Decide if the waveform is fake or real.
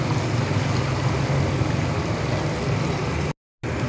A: real